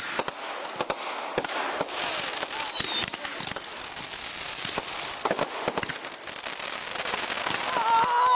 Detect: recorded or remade recorded